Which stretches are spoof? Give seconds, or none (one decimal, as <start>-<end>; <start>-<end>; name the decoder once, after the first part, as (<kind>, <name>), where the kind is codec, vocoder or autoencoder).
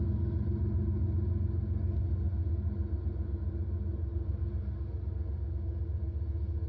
2.0-2.5 (autoencoder, DAC-VAE)